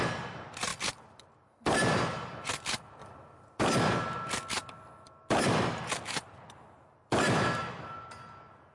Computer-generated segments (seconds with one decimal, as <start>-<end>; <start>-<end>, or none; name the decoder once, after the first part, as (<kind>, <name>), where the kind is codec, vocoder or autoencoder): 3.0-3.6 (vocoder, BigVGAN v2)